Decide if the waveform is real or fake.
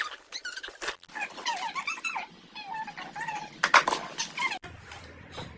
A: real